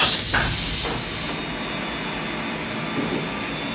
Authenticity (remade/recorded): recorded